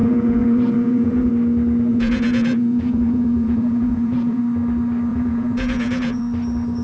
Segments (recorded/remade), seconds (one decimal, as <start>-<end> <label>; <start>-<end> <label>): 0.0-1.3 remade; 1.3-1.9 recorded; 1.9-4.4 remade; 4.4-5.1 recorded; 5.1-6.2 remade; 6.2-6.8 recorded